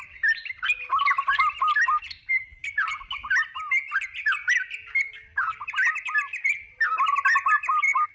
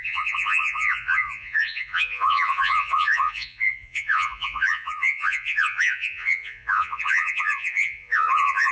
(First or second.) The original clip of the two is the first